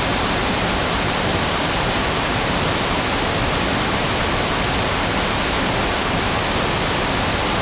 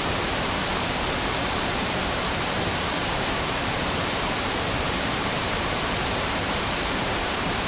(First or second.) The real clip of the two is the first